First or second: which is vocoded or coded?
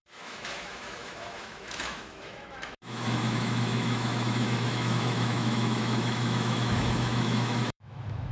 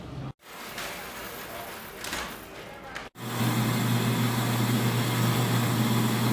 first